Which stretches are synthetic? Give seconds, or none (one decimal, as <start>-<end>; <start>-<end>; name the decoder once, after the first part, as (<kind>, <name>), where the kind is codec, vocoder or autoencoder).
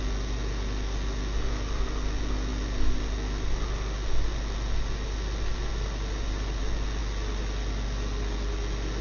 none